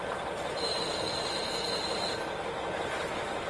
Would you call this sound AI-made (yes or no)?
no